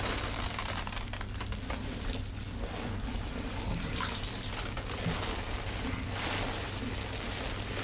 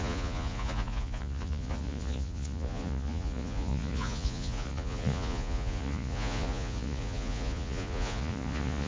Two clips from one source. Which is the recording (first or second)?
first